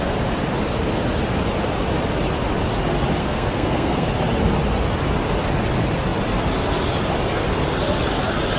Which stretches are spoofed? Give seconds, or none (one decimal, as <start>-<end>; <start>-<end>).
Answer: 3.2-4.1